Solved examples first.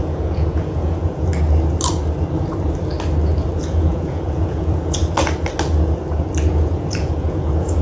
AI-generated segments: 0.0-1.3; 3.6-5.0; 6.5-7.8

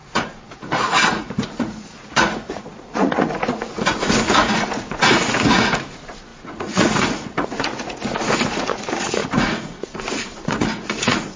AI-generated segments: 0.0-11.4

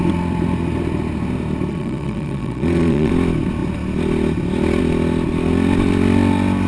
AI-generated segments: 1.7-3.1

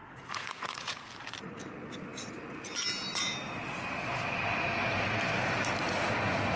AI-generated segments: 0.0-1.1

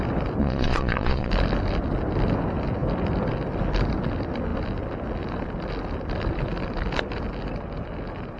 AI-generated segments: 0.4-1.3

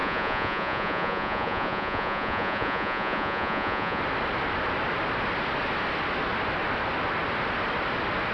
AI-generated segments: 0.0-4.0

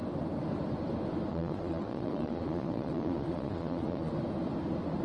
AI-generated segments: 1.3-4.1